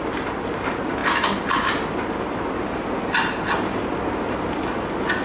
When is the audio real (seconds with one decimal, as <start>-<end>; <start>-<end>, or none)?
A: 0.0-5.2